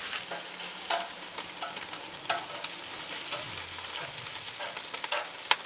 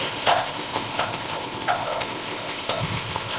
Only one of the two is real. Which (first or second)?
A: first